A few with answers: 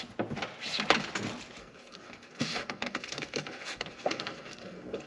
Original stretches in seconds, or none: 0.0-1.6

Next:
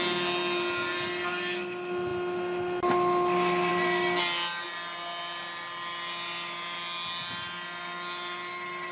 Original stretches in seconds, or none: 0.0-8.9

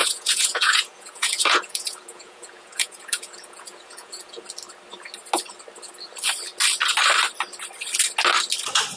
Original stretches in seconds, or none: 4.4-9.0